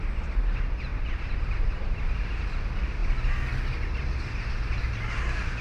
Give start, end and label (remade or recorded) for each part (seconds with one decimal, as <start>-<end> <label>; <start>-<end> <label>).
0.0-0.9 recorded; 0.9-1.8 remade; 1.8-5.6 recorded

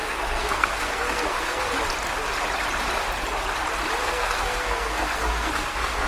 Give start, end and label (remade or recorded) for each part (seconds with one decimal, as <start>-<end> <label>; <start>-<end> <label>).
0.0-1.7 remade; 1.7-4.0 recorded; 4.0-6.1 remade

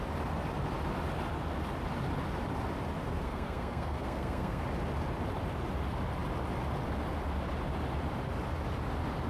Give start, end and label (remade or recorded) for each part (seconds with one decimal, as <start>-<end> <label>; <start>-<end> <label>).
0.0-3.1 recorded; 3.1-4.6 remade; 4.6-9.3 recorded

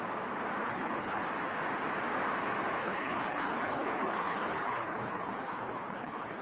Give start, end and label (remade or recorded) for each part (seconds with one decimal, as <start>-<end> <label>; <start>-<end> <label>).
0.0-0.6 recorded; 0.6-1.2 remade; 1.2-2.8 recorded; 2.8-6.4 remade

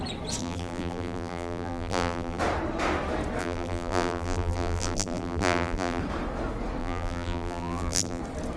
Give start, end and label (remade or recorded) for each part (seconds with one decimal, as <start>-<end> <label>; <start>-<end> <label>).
0.0-0.4 recorded; 0.4-2.4 remade; 2.4-3.4 recorded; 3.4-6.0 remade; 6.0-6.8 recorded; 6.8-8.2 remade; 8.2-8.6 recorded

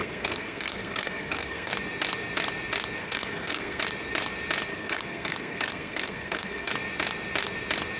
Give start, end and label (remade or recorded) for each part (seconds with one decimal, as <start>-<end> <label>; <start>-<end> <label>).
0.0-1.7 remade; 1.7-3.0 recorded; 3.0-3.8 remade; 3.8-4.7 recorded; 4.7-6.7 remade; 6.7-8.0 recorded